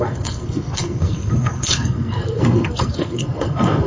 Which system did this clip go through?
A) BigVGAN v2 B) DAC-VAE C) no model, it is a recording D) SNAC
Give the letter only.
D